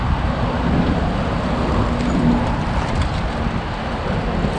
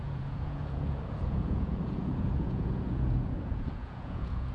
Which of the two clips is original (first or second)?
first